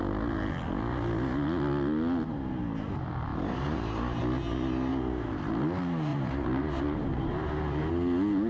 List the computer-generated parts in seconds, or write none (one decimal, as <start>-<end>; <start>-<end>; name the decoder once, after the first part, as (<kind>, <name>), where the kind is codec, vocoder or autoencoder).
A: 3.3-4.2 (vocoder, BigVGAN v2); 4.9-5.5; 6.1-7.9